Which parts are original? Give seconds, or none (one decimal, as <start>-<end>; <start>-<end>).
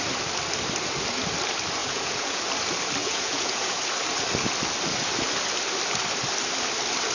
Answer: 0.0-1.8; 2.4-3.0; 3.8-7.1